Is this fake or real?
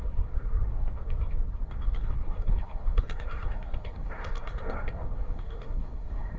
fake